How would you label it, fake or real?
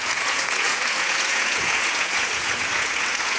fake